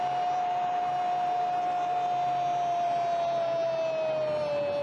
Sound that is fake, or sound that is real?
real